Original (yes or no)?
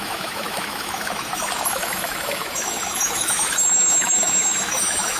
no